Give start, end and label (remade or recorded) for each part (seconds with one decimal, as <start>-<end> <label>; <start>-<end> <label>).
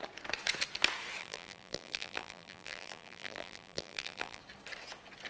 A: 0.0-1.2 recorded; 1.2-4.4 remade; 4.4-5.3 recorded